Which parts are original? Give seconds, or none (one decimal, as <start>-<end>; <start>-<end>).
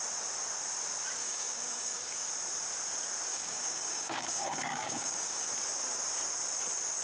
0.0-1.2; 2.3-3.3; 5.5-7.0